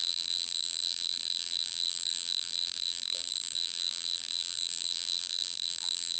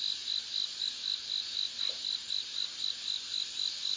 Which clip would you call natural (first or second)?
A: second